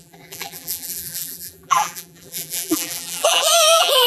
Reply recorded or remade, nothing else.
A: remade